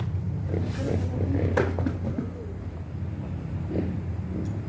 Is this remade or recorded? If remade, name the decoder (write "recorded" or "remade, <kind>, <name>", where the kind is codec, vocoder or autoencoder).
recorded